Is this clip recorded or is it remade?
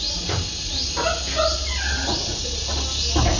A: recorded